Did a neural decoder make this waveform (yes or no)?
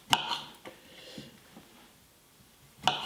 no